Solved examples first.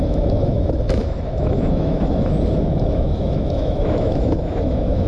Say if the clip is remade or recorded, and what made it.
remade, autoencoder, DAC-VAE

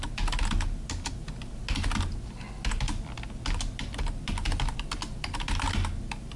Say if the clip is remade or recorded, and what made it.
recorded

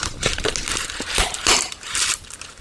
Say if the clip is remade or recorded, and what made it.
recorded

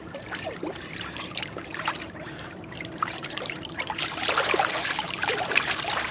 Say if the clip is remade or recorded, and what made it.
remade, vocoder, BigVGAN v2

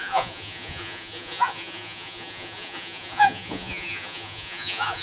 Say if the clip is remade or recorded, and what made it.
remade, vocoder, Vocos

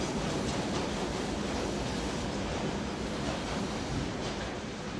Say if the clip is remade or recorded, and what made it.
recorded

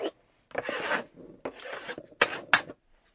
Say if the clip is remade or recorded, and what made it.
recorded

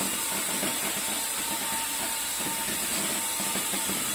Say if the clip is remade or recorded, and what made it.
recorded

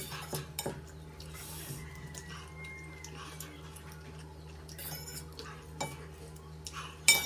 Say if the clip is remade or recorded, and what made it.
recorded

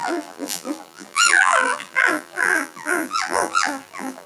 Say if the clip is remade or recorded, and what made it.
remade, vocoder, BigVGAN v2